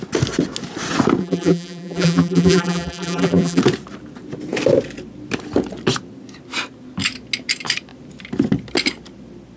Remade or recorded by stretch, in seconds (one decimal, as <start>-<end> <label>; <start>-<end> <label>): 0.0-1.2 recorded; 1.2-3.6 remade; 3.6-9.6 recorded